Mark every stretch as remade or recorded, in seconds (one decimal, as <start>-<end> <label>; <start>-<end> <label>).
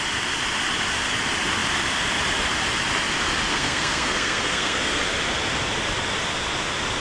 0.0-3.5 recorded; 3.5-5.0 remade; 5.0-7.0 recorded